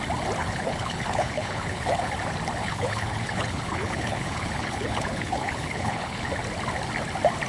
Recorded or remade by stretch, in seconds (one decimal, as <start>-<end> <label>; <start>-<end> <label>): 0.0-0.4 recorded; 0.4-2.1 remade; 2.1-2.6 recorded; 2.6-6.3 remade; 6.3-7.5 recorded